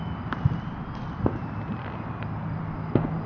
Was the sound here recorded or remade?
recorded